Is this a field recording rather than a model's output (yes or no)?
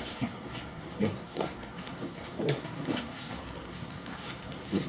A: no